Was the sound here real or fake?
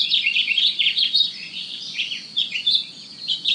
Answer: fake